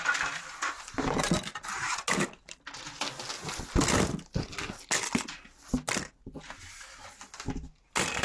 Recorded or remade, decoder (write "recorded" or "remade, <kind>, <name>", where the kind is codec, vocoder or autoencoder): recorded